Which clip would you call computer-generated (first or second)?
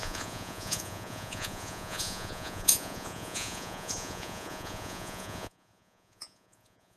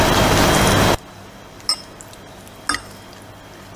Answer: first